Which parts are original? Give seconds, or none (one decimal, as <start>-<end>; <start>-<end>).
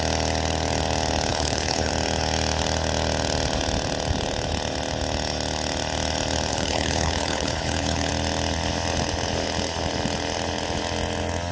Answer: 0.0-1.3; 1.9-6.5; 8.1-11.5